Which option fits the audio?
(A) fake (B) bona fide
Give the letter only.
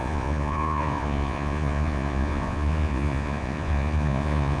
A